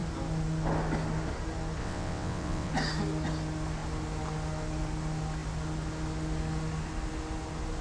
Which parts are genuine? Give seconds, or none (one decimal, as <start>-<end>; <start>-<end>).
0.0-1.8; 2.7-7.8